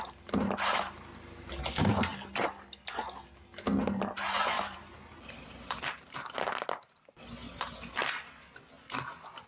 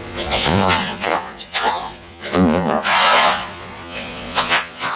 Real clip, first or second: first